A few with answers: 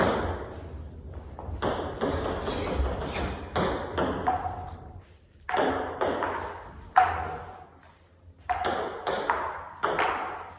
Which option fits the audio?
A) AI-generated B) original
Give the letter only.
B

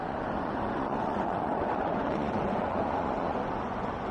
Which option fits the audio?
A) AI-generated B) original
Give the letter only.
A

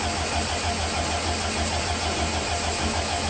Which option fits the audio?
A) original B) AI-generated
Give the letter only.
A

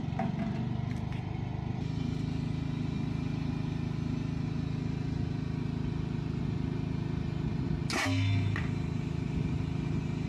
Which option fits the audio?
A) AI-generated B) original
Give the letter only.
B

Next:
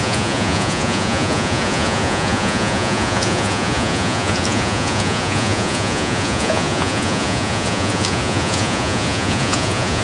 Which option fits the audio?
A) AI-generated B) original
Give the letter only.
A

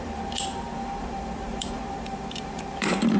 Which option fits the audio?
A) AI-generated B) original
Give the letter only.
A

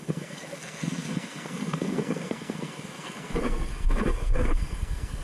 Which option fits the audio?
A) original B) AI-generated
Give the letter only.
B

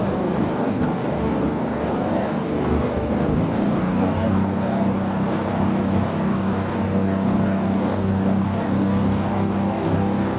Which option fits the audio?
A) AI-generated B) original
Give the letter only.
A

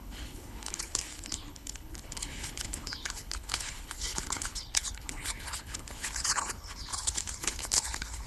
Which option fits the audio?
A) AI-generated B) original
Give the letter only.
A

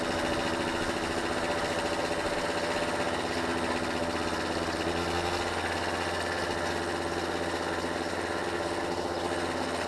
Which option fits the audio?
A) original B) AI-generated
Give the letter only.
A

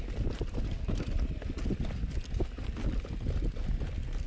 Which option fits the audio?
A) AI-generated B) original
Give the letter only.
B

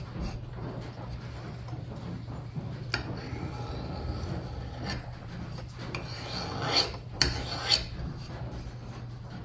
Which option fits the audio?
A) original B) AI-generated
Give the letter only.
A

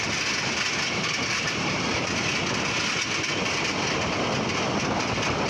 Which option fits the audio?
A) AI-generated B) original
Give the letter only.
B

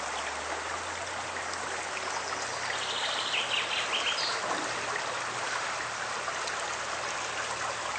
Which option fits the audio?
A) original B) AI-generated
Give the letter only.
A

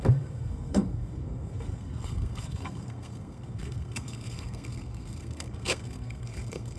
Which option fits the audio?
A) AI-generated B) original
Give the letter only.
A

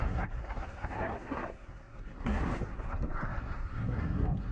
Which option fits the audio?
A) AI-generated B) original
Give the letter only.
A